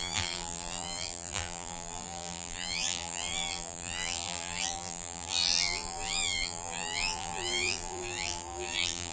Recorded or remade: remade